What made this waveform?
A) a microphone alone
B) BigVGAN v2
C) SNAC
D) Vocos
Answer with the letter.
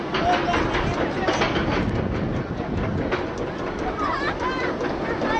A